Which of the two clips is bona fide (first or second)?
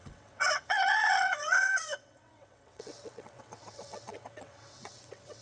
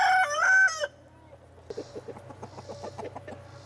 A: second